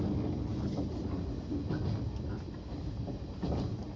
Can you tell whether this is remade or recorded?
recorded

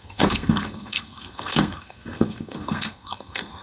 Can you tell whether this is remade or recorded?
remade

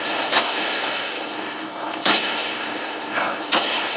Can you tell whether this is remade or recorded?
remade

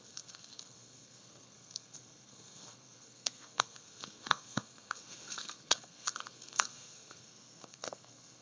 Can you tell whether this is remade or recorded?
remade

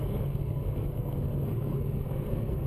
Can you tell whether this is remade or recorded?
remade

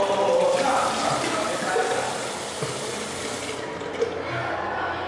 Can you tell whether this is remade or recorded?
recorded